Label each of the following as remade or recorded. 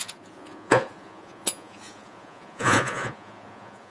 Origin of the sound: remade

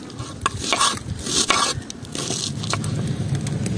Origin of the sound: recorded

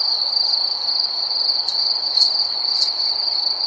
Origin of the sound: recorded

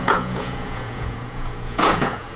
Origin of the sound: remade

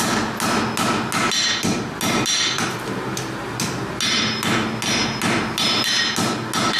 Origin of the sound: recorded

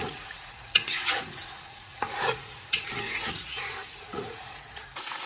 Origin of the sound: remade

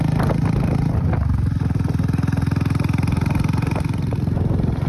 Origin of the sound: recorded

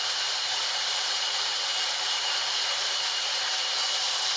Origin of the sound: recorded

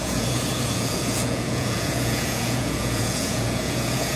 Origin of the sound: remade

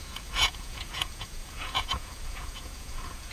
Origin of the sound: remade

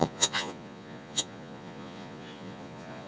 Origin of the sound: remade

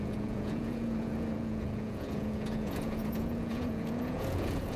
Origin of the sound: remade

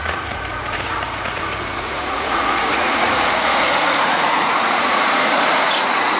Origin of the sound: remade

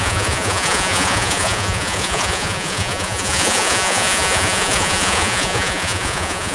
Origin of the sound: remade